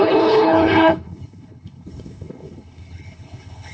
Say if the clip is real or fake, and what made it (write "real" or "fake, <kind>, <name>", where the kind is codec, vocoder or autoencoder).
fake, codec, HILCodec